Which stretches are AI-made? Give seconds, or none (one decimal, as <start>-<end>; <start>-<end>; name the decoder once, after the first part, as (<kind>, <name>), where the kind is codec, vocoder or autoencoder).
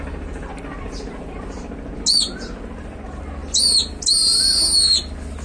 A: none